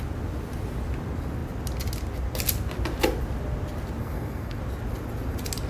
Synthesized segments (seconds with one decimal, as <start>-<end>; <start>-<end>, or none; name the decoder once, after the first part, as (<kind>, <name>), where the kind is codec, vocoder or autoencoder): 4.0-4.6 (codec, SNAC)